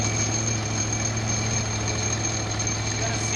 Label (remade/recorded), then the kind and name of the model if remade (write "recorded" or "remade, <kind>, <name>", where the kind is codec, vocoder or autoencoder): recorded